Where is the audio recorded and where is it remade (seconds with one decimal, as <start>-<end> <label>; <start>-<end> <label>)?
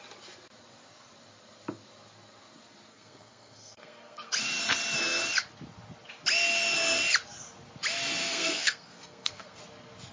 0.0-2.9 recorded; 2.9-4.3 remade; 4.3-8.2 recorded; 8.2-9.6 remade; 9.6-10.1 recorded